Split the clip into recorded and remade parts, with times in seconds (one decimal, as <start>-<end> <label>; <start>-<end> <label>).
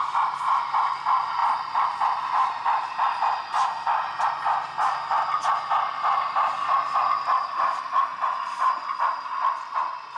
0.0-10.2 recorded